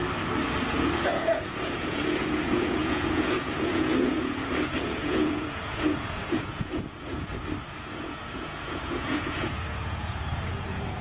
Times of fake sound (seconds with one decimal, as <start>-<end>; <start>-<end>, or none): 0.7-7.3; 7.9-11.0